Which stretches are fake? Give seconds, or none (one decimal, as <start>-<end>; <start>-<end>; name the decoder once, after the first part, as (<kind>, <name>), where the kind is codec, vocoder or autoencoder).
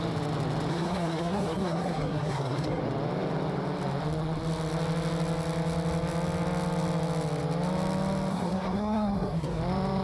0.7-2.8 (codec, SNAC); 8.3-9.6